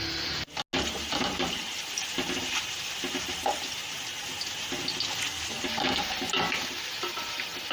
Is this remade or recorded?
recorded